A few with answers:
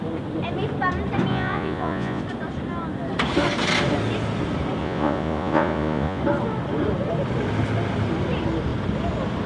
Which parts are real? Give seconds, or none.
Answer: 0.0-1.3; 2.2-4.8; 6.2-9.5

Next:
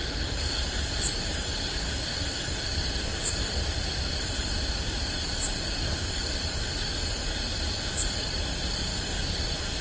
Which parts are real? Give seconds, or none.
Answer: 0.0-9.8

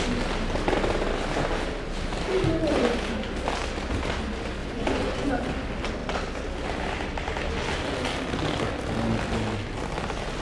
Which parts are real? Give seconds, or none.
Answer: 0.0-4.6; 5.3-10.4

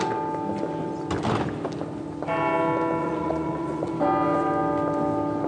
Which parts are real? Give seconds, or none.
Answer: 0.0-3.0; 3.9-5.5

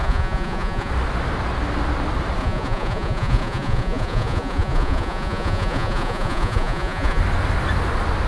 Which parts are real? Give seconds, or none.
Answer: 0.9-2.4; 7.2-8.3

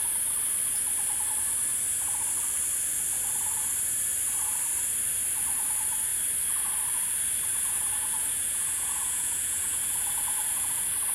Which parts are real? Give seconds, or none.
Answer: 0.0-7.5; 10.7-11.1